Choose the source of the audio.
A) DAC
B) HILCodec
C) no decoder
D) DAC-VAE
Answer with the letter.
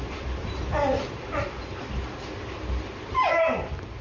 C